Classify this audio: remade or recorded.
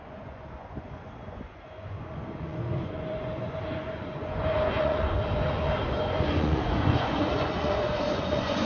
remade